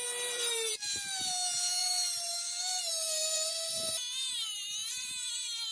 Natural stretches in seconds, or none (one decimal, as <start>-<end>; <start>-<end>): 0.7-1.8; 3.9-5.7